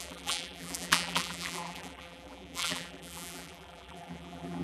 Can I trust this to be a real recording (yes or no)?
no